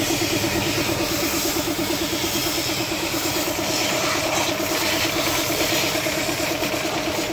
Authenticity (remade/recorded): recorded